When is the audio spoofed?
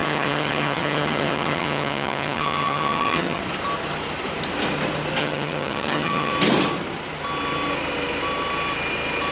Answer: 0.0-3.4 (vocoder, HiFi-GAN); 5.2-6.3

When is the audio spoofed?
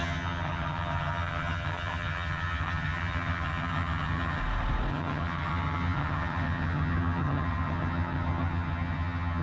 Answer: 0.0-4.4 (vocoder, HiFi-GAN); 4.9-9.4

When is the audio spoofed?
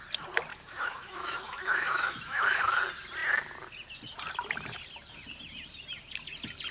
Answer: 0.5-2.8 (autoencoder, DAC-VAE)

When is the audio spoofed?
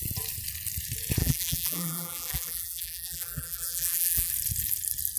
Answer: 1.2-4.3 (vocoder, BigVGAN v2)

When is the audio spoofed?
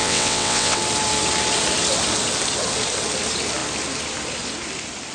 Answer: 0.0-0.8 (vocoder, WaveNeXt)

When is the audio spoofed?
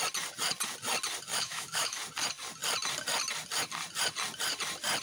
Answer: 1.3-2.0 (autoencoder, DAC-VAE)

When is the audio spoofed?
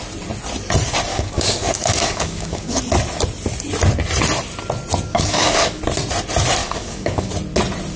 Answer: 1.1-2.8 (codec, DAC); 5.1-5.8; 6.6-7.3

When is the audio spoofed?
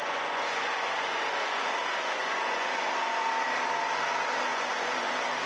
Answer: 0.0-3.3 (vocoder, Vocos); 4.5-5.1